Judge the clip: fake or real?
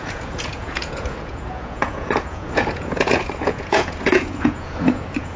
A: fake